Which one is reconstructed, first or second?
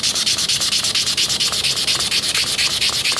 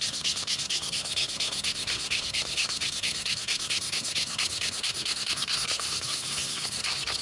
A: second